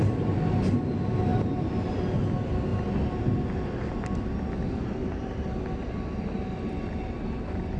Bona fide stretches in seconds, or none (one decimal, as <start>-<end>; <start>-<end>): 0.0-1.3; 1.9-5.0; 5.5-7.8